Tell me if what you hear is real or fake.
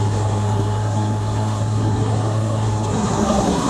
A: fake